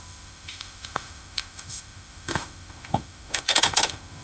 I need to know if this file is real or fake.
fake